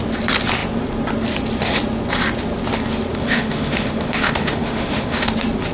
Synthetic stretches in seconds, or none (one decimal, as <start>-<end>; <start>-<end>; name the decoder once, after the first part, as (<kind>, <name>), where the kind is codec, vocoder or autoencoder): 3.1-5.3 (autoencoder, DAC-VAE)